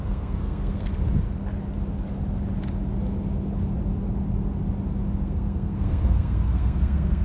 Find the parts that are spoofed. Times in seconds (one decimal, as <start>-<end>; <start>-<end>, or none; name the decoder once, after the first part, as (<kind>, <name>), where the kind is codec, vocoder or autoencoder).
0.0-0.9 (codec, SNAC); 5.2-7.2